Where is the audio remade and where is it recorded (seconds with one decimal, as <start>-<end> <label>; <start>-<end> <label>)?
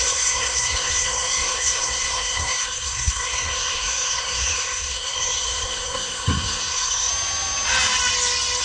0.0-7.1 remade; 7.1-8.6 recorded